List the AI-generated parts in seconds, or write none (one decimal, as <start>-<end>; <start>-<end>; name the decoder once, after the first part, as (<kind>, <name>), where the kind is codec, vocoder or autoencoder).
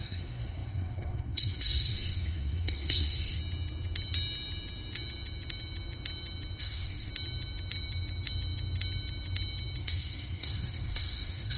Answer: 0.0-3.4 (codec, SNAC); 6.6-7.1; 9.8-11.6